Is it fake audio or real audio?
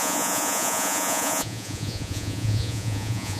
fake